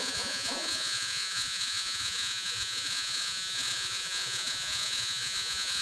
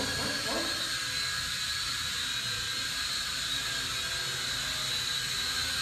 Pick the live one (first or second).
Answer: second